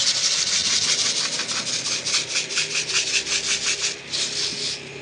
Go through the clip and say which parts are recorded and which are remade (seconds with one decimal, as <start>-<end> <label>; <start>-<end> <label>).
0.0-5.0 recorded